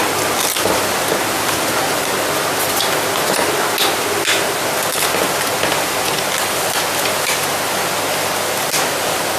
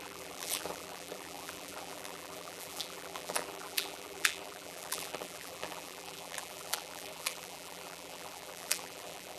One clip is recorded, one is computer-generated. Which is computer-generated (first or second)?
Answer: second